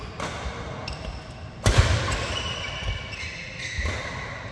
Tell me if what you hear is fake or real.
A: real